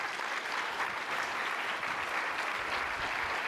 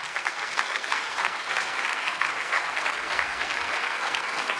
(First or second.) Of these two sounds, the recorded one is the first